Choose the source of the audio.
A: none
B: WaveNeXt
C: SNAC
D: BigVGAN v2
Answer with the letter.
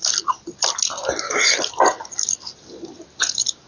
A